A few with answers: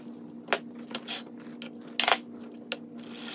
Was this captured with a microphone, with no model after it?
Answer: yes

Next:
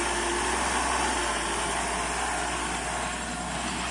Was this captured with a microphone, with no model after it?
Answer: yes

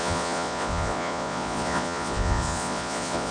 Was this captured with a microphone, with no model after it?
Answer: no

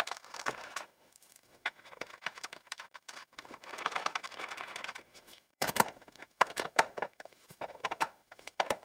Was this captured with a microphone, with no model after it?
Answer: no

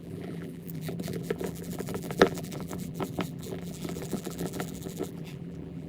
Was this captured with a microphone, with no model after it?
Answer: no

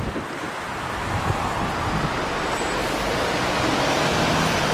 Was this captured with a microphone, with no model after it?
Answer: yes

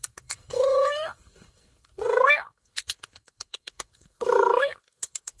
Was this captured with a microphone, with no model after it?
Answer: no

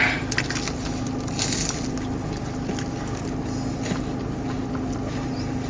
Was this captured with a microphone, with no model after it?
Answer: yes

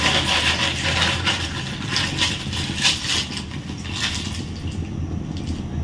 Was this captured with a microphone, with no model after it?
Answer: yes